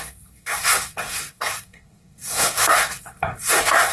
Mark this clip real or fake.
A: fake